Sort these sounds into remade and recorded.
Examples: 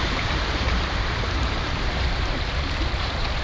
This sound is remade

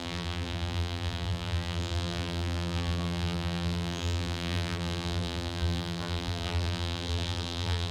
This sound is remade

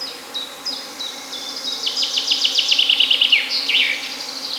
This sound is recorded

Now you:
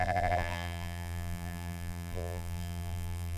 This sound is remade